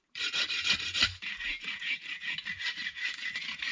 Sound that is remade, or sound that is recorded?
remade